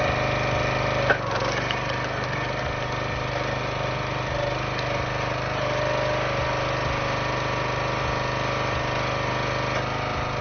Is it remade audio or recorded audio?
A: recorded